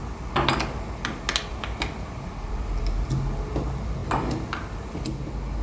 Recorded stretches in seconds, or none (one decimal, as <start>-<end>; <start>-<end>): 0.0-5.6